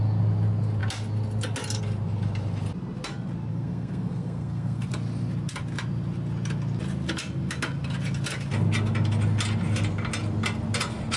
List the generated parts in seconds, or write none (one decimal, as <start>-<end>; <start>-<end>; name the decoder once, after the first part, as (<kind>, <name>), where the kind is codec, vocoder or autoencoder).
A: 3.5-4.9 (codec, SNAC)